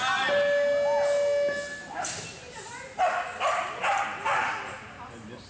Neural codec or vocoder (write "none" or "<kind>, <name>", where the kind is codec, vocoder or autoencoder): none